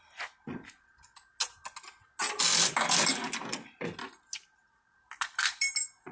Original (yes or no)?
yes